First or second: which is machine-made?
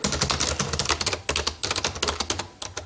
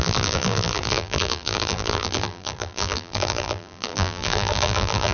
second